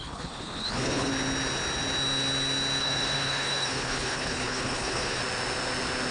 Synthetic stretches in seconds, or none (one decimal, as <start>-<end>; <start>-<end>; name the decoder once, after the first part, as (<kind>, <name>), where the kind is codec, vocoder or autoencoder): 0.0-1.1 (codec, HILCodec); 2.8-5.2